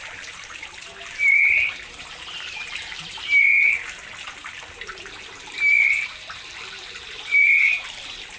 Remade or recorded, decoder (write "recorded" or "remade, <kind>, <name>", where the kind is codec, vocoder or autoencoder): remade, vocoder, BigVGAN v2